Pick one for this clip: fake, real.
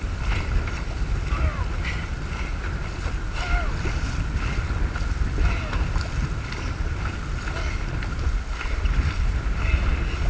real